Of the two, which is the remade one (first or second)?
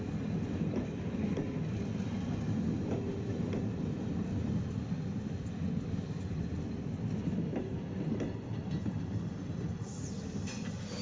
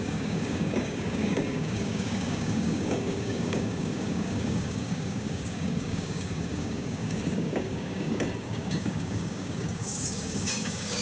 second